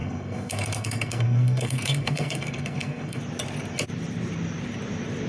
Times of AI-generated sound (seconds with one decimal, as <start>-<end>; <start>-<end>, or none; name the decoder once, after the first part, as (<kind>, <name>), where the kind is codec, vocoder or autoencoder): 0.0-3.2 (codec, SNAC)